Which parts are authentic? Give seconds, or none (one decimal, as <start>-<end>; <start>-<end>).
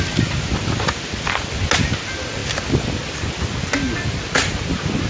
0.0-5.1